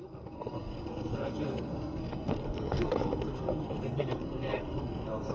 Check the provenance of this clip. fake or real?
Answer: fake